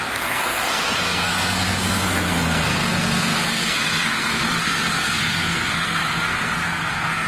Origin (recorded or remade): remade